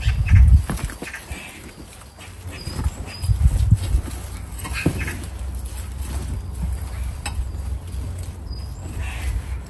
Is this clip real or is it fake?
real